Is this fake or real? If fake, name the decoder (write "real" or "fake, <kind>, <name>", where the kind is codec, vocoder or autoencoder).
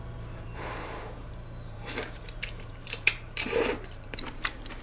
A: fake, vocoder, BigVGAN v2